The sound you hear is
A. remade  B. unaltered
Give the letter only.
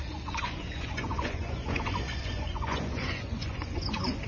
A